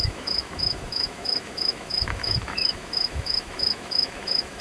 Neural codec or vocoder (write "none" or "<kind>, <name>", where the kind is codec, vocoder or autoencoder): autoencoder, DAC-VAE